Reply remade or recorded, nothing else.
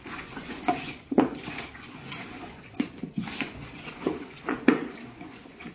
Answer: remade